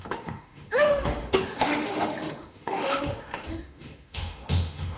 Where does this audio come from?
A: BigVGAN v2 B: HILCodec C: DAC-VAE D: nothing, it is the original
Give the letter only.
C